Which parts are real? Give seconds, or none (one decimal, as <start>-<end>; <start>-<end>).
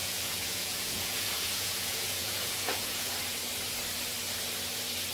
3.1-5.1